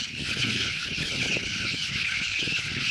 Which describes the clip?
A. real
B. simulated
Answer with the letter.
B